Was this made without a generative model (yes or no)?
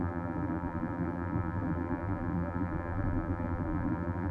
no